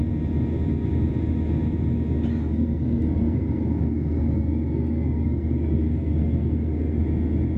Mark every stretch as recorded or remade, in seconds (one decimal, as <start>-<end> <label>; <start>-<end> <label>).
0.0-2.4 recorded; 2.4-7.0 remade; 7.0-7.6 recorded